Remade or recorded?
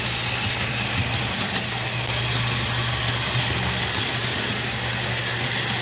recorded